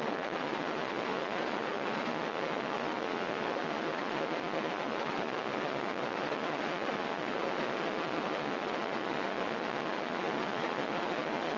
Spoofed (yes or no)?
yes